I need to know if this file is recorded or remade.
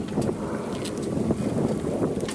recorded